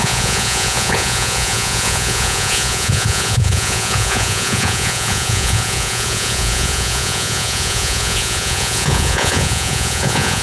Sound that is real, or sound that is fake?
fake